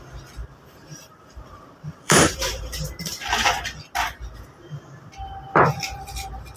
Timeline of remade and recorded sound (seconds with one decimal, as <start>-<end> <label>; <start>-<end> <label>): 0.0-0.4 recorded; 0.4-3.6 remade; 3.6-6.6 recorded